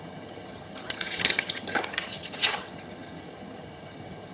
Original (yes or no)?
no